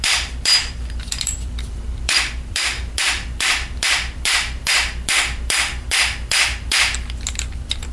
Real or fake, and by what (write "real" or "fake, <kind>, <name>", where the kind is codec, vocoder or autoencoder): fake, vocoder, BigVGAN v2